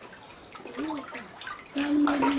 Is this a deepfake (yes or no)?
no